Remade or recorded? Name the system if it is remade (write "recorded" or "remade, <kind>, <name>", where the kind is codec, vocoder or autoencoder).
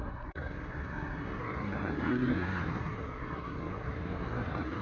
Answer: remade, codec, SNAC